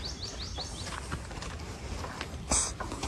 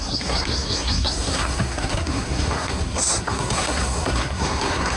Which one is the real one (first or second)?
first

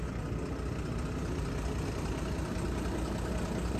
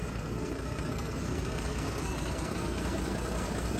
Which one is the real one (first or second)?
first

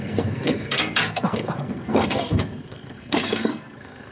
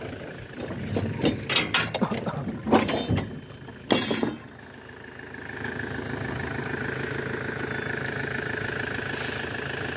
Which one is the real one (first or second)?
second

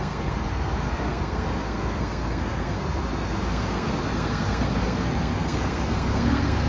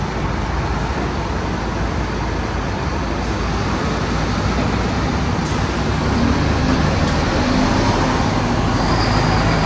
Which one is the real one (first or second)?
second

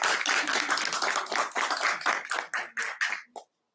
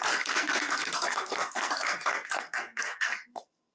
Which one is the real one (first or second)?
first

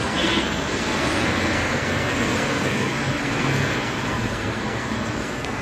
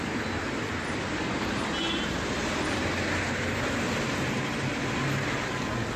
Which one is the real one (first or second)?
second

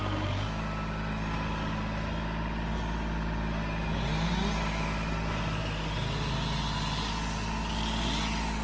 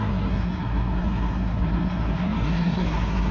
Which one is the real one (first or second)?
first